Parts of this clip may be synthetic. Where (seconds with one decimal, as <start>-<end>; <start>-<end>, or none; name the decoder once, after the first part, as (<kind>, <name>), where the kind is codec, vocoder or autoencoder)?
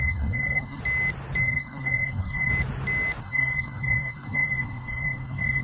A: 0.0-0.8 (codec, SNAC); 1.4-2.5; 3.2-5.6